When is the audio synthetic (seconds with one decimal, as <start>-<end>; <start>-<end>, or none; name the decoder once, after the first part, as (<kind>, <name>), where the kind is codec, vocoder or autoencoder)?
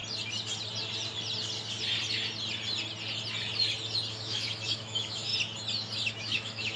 4.1-5.3 (autoencoder, DAC-VAE); 6.1-6.8